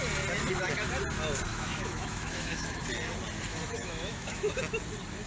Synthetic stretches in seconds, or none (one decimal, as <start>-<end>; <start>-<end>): 1.5-2.8; 3.5-4.5